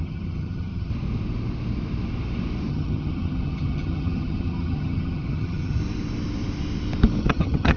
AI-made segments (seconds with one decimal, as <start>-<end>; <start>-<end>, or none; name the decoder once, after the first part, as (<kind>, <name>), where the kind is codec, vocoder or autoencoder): 0.0-0.9 (vocoder, HiFi-GAN); 2.7-5.8; 7.2-7.8